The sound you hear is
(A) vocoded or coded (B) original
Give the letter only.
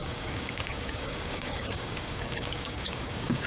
A